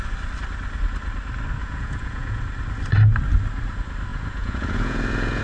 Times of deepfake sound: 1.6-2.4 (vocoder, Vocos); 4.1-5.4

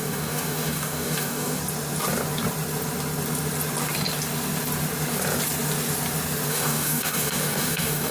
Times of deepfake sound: 0.0-1.6 (codec, DAC); 6.5-8.1

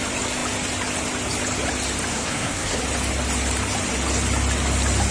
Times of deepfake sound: 2.1-2.8 (codec, SNAC)

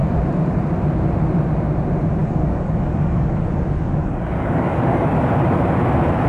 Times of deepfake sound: 2.2-5.1 (codec, DAC)

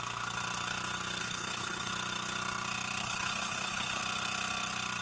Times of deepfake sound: 1.2-1.9 (codec, HILCodec); 3.0-4.0